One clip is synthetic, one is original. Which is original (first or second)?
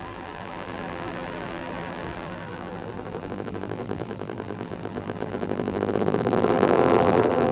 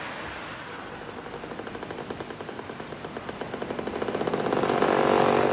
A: second